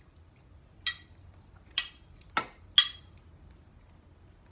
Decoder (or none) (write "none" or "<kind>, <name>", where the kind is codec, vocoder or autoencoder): none